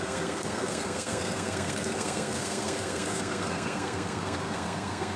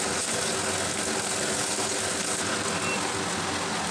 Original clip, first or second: second